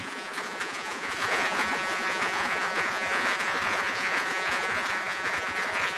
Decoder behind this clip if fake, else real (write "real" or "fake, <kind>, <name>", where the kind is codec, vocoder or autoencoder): fake, vocoder, Vocos